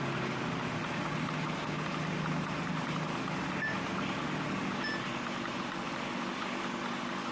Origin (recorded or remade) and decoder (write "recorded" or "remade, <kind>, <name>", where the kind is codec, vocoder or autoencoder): recorded